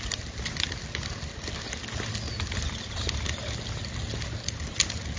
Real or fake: real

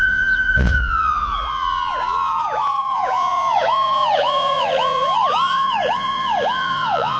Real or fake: fake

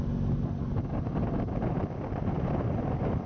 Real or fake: real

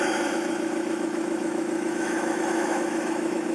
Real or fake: fake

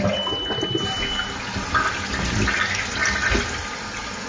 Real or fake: real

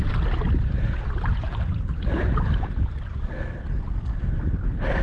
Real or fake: real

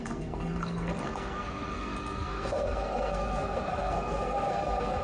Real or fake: fake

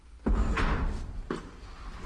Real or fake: real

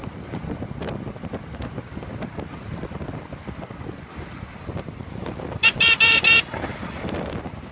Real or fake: real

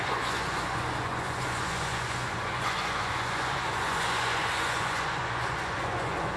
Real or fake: fake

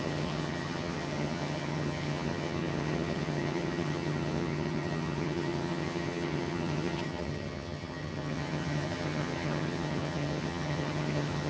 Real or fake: fake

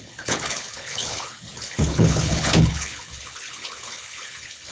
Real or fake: fake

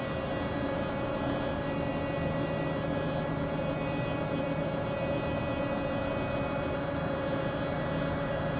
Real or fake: real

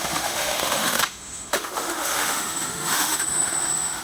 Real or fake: fake